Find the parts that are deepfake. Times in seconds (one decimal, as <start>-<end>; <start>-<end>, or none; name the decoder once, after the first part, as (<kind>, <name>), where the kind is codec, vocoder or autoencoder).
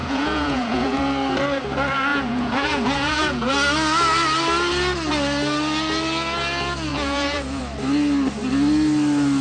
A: 0.0-1.0 (vocoder, Vocos); 2.1-3.5; 6.9-7.6